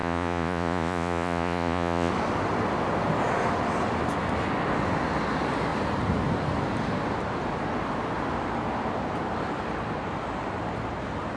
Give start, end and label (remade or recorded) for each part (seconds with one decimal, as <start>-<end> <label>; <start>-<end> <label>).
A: 0.0-2.1 remade; 2.1-11.4 recorded